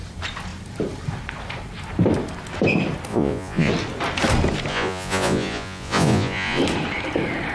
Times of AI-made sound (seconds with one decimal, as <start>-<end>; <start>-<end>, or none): 3.1-3.7; 4.7-6.6